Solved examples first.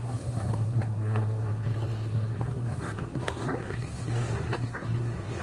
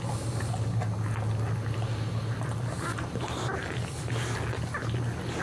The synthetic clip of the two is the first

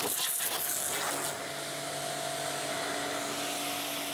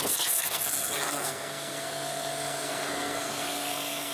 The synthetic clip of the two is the second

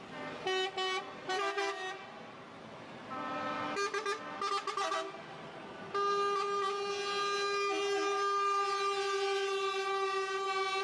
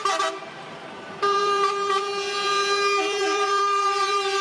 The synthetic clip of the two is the second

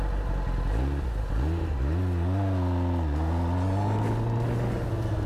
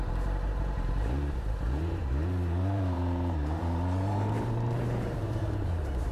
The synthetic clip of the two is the second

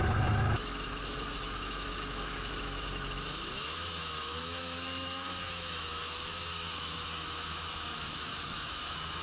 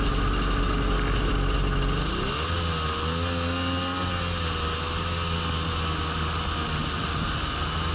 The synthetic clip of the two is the first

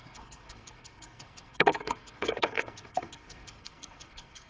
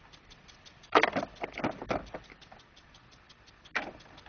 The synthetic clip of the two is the first